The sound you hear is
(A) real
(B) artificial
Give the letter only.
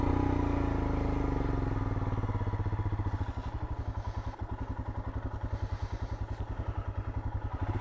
A